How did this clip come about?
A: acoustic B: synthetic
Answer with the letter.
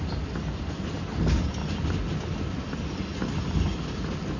A